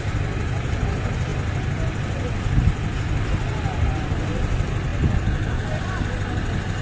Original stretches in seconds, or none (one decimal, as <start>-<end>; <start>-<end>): 0.0-6.8